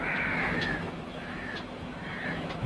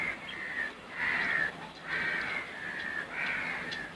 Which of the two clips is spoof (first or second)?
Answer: first